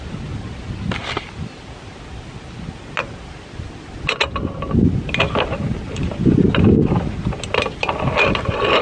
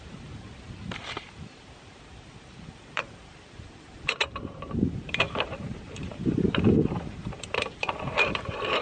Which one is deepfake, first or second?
second